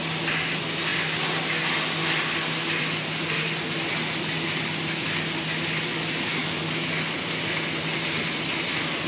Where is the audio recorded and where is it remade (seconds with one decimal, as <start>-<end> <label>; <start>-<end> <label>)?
0.0-6.4 recorded; 6.4-6.9 remade; 6.9-9.1 recorded